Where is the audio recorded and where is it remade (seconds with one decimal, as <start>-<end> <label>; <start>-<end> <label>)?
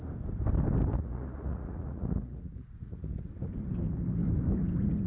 0.0-0.9 recorded; 0.9-3.3 remade; 3.3-5.1 recorded